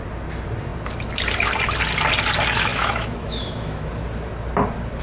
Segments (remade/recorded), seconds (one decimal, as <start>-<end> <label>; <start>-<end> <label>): 0.0-2.7 recorded; 2.7-3.9 remade; 3.9-5.0 recorded